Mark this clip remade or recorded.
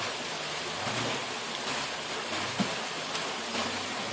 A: recorded